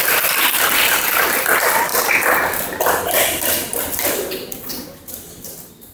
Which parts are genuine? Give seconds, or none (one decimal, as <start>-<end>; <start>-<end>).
0.0-5.9